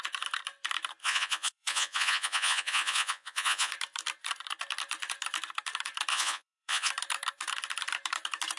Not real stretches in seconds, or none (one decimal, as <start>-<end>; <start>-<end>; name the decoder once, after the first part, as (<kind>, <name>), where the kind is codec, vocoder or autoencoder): 1.0-3.7 (vocoder, Vocos); 6.1-6.9